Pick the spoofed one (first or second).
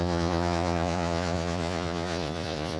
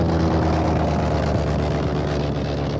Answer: first